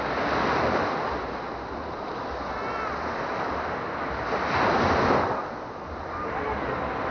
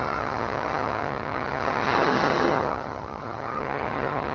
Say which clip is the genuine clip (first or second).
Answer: first